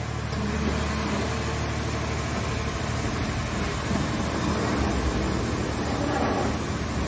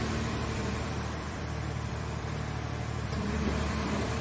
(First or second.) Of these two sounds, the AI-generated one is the second